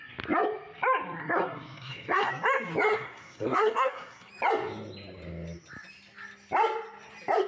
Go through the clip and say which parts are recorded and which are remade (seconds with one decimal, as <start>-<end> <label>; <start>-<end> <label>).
0.0-1.2 recorded; 1.2-2.3 remade; 2.3-2.9 recorded; 2.9-4.3 remade; 4.3-7.5 recorded